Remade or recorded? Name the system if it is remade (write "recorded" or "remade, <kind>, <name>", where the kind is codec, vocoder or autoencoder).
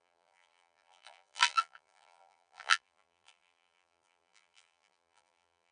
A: remade, vocoder, BigVGAN v2